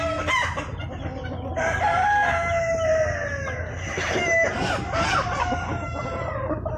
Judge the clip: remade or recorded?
recorded